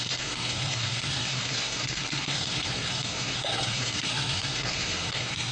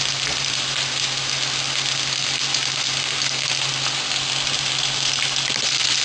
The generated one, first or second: first